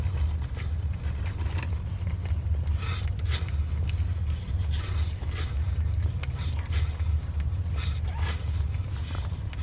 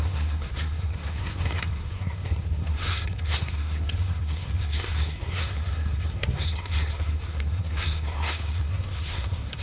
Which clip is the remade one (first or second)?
second